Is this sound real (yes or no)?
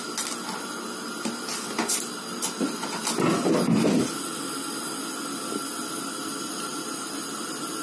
yes